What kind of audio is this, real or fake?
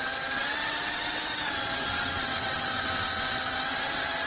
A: fake